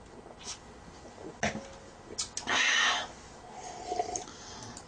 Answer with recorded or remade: recorded